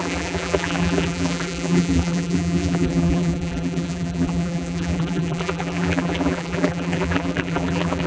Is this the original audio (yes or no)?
no